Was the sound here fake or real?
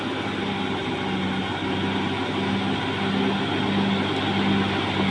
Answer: real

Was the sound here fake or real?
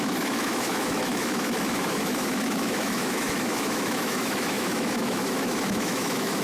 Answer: fake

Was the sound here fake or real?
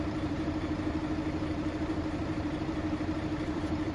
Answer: fake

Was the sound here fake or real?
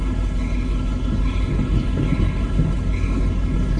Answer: fake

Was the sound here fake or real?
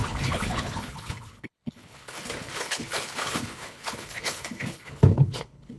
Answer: fake